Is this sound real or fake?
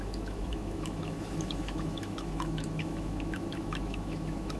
fake